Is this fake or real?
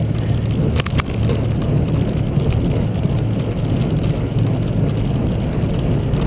real